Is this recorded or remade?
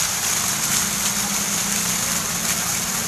recorded